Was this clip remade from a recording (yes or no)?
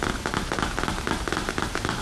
no